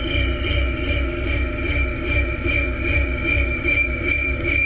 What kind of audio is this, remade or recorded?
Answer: remade